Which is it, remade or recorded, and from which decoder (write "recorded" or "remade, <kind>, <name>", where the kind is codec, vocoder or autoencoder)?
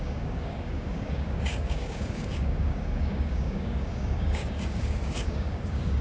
remade, codec, DAC